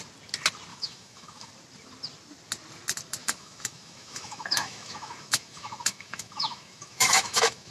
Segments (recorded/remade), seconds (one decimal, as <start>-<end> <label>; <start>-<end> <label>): 0.0-0.7 recorded; 0.7-1.5 remade; 1.5-3.2 recorded; 3.2-7.7 remade